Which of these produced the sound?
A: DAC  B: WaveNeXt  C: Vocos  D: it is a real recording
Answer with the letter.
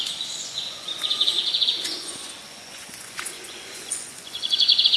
C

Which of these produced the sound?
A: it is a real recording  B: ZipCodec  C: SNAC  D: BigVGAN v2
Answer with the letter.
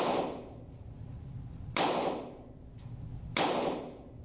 A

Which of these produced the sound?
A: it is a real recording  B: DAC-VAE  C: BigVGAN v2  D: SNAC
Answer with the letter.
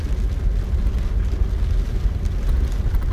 A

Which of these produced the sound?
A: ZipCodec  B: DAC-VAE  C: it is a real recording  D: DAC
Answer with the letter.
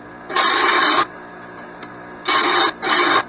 C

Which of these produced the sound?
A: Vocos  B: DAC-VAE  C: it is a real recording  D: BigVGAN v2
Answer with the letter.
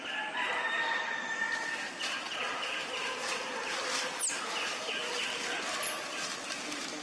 C